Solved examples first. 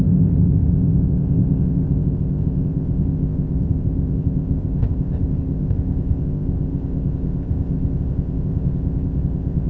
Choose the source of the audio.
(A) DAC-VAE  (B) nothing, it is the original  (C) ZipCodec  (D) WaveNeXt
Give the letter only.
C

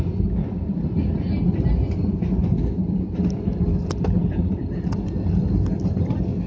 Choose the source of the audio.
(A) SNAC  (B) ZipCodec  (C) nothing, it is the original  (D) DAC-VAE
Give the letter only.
C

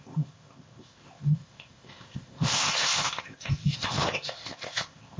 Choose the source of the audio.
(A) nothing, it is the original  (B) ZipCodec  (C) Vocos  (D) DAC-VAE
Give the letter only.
B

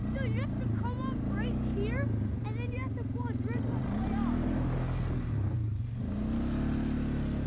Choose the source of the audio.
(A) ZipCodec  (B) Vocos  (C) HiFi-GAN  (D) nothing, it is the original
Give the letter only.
D